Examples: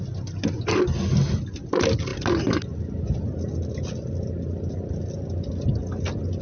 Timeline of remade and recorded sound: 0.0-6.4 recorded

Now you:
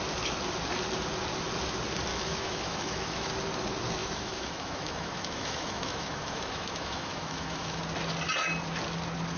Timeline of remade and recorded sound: 0.0-2.1 recorded; 2.1-3.3 remade; 3.3-4.0 recorded; 4.0-7.8 remade; 7.8-9.4 recorded